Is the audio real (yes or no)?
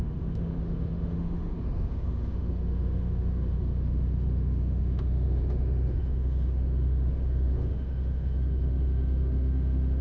no